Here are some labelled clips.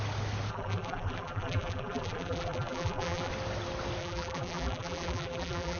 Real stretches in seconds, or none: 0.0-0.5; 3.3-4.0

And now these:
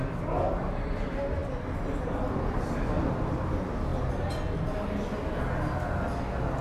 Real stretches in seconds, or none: 0.0-6.6

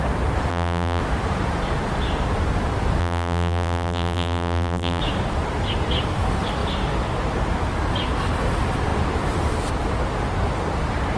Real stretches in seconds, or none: 0.0-0.5; 1.0-3.0; 5.0-11.2

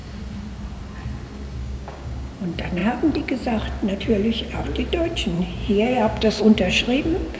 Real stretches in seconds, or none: 0.0-1.6; 2.3-5.6; 6.4-7.4

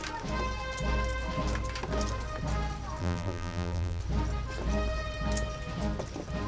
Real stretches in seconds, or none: 0.0-3.0; 4.0-6.5

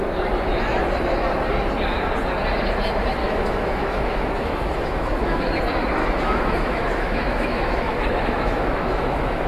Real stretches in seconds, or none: 0.0-3.2; 5.6-6.0

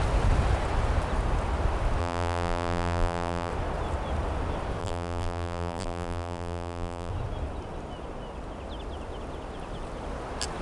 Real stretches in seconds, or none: 0.0-2.0; 3.5-4.8; 7.1-10.6

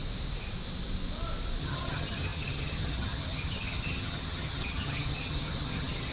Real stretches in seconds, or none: 0.0-1.6